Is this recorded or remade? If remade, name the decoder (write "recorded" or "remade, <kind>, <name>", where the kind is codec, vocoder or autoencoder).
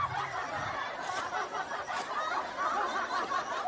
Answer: recorded